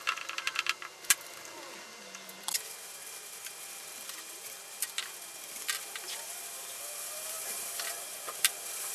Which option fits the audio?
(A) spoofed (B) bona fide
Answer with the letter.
A